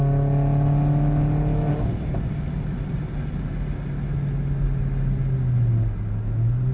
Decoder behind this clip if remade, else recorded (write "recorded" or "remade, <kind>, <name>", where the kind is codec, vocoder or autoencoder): recorded